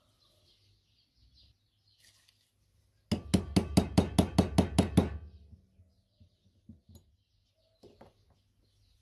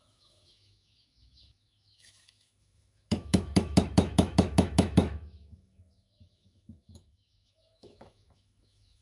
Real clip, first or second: first